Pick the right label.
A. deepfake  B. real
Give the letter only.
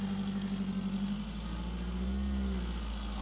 B